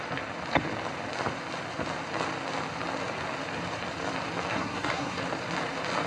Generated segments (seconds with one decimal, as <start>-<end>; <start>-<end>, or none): 4.5-5.2